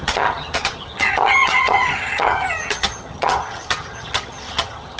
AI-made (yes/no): yes